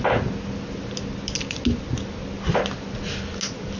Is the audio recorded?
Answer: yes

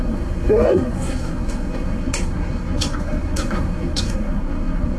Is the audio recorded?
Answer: no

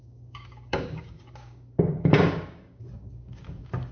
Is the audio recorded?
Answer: no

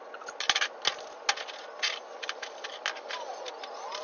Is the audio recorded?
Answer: yes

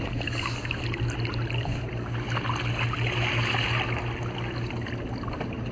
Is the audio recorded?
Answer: yes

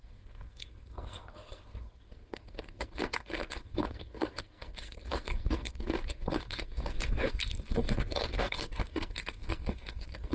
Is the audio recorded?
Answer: no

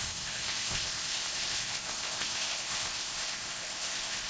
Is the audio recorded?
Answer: no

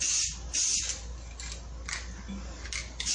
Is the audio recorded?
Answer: yes